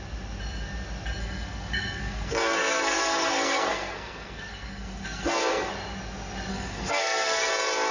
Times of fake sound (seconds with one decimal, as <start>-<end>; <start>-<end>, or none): 1.2-5.7; 6.5-7.5